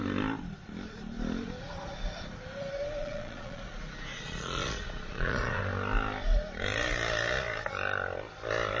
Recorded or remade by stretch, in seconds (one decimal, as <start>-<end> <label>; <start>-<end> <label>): 0.0-3.0 recorded; 3.0-3.6 remade; 3.6-4.1 recorded; 4.1-5.6 remade; 5.6-8.8 recorded